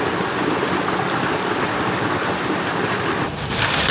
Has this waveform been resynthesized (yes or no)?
no